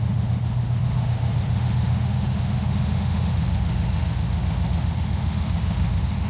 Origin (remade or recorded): remade